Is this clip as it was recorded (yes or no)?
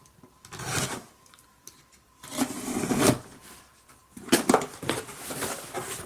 yes